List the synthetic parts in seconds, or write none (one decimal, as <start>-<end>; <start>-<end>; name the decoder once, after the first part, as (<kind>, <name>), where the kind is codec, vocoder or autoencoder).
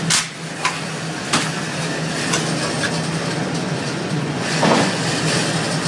3.6-5.0 (vocoder, Vocos)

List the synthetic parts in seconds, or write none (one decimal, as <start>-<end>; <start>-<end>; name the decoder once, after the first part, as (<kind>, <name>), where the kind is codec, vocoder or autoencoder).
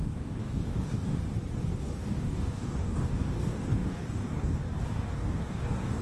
0.0-1.2 (codec, DAC); 1.8-6.0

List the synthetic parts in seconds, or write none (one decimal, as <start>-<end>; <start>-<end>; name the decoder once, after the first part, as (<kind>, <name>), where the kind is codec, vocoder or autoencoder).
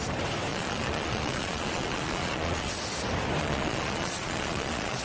0.5-2.7 (vocoder, Vocos); 3.4-5.0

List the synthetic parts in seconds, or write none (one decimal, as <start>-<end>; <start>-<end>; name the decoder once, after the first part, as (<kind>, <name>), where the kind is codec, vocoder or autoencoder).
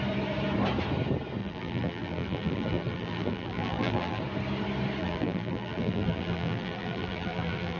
1.4-4.2 (vocoder, BigVGAN v2); 5.0-7.8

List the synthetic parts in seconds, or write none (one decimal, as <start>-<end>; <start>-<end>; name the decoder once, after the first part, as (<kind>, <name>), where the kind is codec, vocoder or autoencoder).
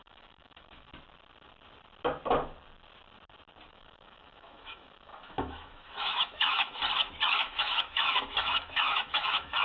0.0-0.9 (autoencoder, DAC-VAE); 3.7-6.8; 7.4-9.6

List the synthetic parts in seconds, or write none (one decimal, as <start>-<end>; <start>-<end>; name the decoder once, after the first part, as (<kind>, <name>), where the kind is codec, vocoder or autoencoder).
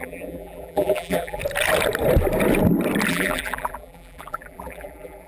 0.0-1.4 (vocoder, BigVGAN v2); 3.1-5.3